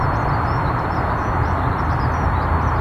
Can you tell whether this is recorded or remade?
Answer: recorded